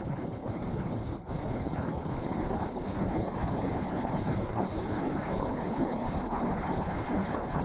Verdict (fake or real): fake